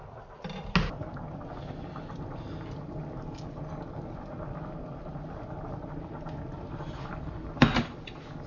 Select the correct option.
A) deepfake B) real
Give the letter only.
B